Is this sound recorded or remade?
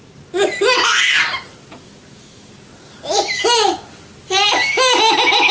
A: recorded